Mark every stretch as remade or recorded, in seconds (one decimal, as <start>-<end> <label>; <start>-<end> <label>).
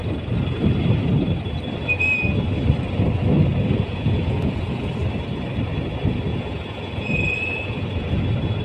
0.0-3.5 recorded; 3.5-4.9 remade; 4.9-6.3 recorded; 6.3-8.2 remade; 8.2-8.6 recorded